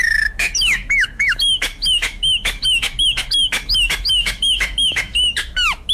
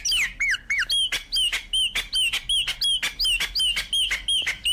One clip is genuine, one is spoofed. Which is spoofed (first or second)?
first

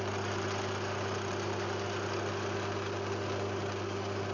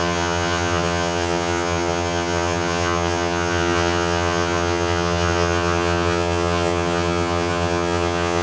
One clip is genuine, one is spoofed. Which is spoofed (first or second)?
second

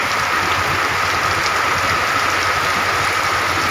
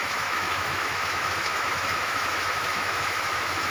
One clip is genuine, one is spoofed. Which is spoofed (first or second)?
second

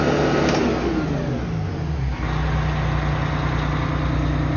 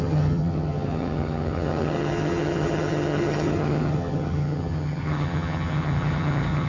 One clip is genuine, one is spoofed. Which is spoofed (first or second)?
second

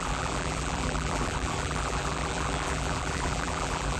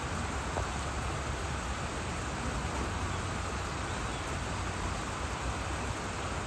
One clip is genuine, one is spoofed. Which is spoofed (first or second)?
first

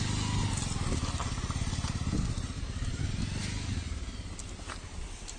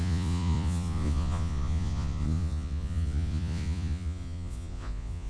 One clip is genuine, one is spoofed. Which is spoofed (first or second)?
second